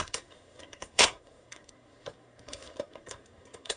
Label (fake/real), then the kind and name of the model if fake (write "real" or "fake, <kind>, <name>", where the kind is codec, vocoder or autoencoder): fake, codec, SNAC